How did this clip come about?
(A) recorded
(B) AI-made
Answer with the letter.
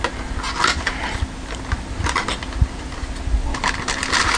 A